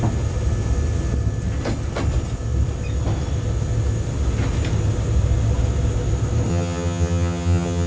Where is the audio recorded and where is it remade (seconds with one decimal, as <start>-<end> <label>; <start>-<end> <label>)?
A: 0.0-6.5 recorded; 6.5-7.9 remade